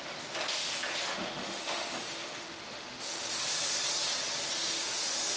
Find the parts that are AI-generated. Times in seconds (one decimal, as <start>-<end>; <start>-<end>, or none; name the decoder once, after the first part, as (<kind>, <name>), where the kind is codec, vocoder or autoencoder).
1.0-3.4 (autoencoder, DAC-VAE); 4.6-5.4